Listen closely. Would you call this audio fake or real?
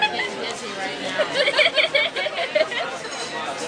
real